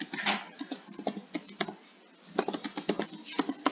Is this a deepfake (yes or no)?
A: no